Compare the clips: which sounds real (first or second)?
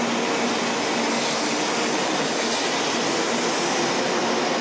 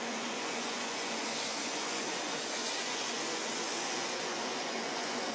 first